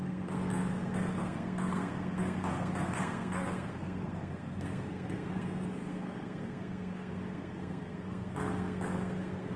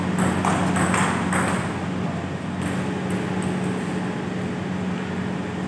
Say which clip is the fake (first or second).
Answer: first